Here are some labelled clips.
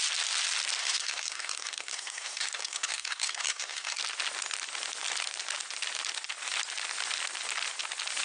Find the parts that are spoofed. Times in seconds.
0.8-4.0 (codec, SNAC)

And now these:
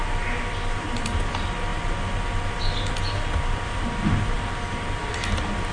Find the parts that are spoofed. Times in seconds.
none

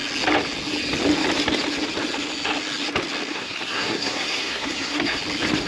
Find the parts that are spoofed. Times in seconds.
3.3-5.2 (codec, SNAC)

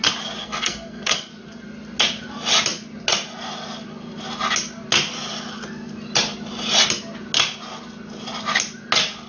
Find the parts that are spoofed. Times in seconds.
0.4-1.3 (codec, SNAC)

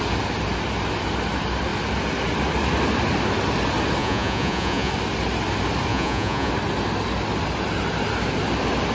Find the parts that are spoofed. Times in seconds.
4.0-4.9 (vocoder, Vocos); 5.9-6.5

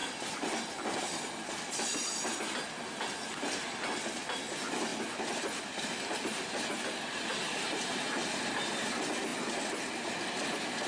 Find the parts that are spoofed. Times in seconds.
none